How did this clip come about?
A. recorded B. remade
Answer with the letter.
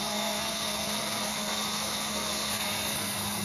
B